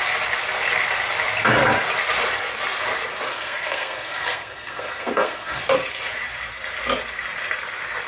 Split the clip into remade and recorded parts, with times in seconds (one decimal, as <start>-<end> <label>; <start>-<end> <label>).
0.0-3.3 recorded; 3.3-5.6 remade; 5.6-8.1 recorded